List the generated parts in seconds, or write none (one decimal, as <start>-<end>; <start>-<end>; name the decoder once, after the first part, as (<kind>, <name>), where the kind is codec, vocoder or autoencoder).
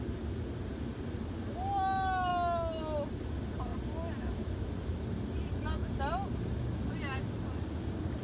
none